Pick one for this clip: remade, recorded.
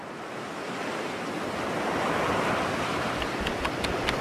recorded